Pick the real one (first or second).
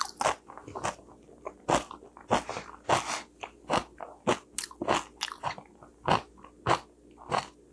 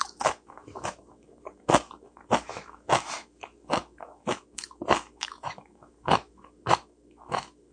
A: first